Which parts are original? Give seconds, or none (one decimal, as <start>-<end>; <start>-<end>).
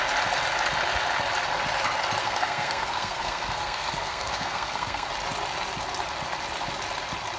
0.0-2.2; 5.1-7.4